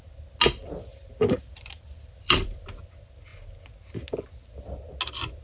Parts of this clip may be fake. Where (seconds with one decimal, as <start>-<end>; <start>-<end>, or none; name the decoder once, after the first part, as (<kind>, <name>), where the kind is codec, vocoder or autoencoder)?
0.9-2.8 (vocoder, BigVGAN v2)